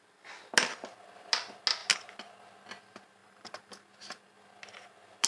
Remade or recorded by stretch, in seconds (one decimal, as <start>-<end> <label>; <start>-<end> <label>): 0.0-3.2 recorded; 3.2-3.8 remade; 3.8-5.3 recorded